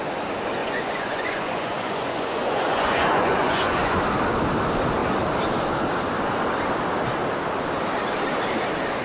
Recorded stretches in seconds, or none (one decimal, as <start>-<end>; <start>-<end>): 0.0-0.6; 4.0-9.0